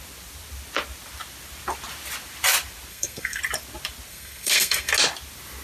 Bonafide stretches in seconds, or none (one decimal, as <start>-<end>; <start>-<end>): 0.0-2.9; 3.4-4.1; 4.9-5.6